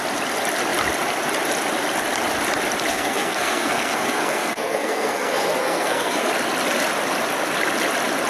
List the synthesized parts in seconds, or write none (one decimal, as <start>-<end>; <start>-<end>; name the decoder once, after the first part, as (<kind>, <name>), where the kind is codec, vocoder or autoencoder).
2.9-6.3 (codec, SNAC)